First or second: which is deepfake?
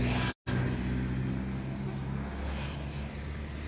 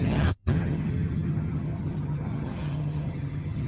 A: second